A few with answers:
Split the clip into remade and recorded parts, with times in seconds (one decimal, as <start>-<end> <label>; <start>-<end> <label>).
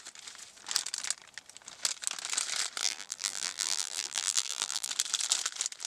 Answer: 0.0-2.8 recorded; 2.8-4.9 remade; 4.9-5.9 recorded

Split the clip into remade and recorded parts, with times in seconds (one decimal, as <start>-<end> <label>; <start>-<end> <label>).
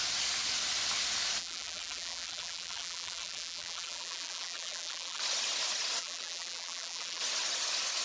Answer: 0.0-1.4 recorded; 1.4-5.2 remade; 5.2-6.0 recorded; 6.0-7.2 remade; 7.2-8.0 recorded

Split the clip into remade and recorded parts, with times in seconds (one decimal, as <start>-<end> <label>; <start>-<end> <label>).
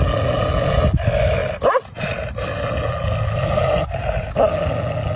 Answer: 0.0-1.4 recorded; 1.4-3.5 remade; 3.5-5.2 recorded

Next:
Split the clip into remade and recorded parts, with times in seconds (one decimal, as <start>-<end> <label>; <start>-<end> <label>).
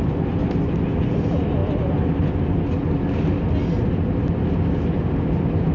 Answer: 0.0-5.7 recorded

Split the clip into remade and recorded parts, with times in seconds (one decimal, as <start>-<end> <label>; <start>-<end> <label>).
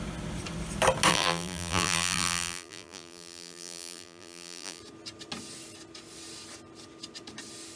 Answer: 0.0-1.1 recorded; 1.1-4.8 remade; 4.8-7.8 recorded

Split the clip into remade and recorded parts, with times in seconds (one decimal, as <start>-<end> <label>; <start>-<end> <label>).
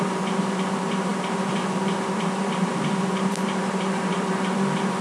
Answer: 0.0-5.0 remade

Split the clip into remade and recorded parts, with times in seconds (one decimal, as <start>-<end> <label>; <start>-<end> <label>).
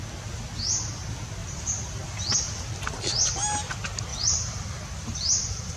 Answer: 0.0-1.4 recorded; 1.4-2.4 remade; 2.4-4.1 recorded; 4.1-5.8 remade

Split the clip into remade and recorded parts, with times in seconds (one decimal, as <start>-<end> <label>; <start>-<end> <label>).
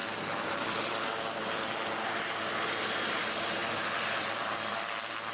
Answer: 0.0-5.3 remade